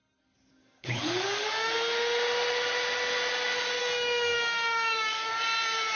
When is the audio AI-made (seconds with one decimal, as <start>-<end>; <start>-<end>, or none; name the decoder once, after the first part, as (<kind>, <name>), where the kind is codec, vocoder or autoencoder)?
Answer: 0.5-1.7 (codec, DAC); 3.8-5.3